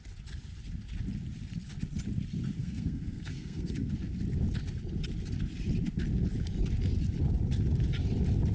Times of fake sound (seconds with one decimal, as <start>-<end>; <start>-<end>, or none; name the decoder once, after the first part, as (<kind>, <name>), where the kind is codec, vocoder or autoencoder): 2.6-3.9 (codec, SNAC)